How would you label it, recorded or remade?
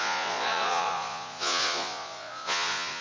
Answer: remade